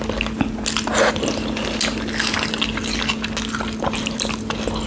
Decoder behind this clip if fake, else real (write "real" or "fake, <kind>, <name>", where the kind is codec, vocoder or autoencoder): real